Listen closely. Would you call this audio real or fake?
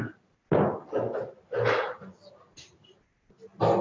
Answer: real